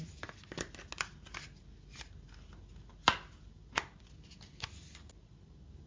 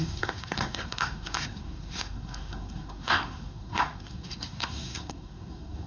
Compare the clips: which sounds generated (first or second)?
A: second